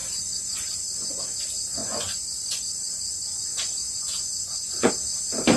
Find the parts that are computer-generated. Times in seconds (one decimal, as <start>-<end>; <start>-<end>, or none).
0.0-1.2; 1.8-4.9